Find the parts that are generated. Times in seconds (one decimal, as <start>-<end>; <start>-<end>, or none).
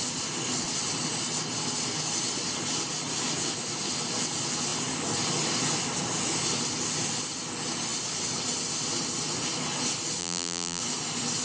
10.2-10.8